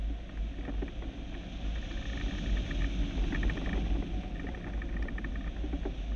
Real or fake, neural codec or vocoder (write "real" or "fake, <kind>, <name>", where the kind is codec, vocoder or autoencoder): real